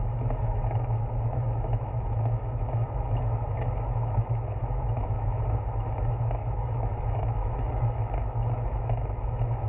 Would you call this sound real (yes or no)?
no